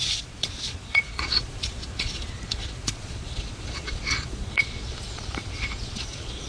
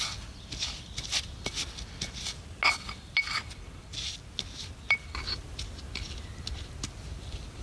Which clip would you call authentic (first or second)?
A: second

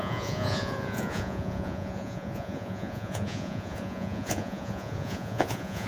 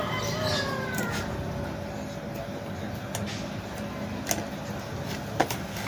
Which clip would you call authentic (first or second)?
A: second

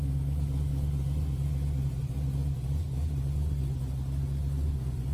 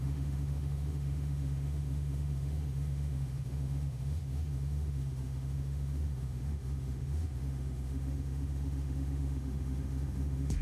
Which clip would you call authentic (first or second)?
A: first